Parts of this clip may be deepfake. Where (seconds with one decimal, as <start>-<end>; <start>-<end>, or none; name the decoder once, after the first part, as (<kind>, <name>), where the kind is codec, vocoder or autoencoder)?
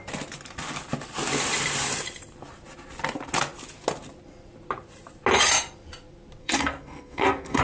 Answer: 6.4-7.6 (codec, SNAC)